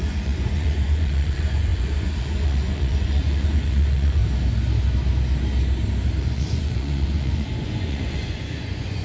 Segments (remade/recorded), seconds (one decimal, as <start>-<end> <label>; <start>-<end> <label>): 0.0-4.2 remade; 4.2-6.2 recorded; 6.2-9.0 remade